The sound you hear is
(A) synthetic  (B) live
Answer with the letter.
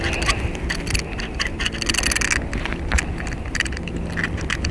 B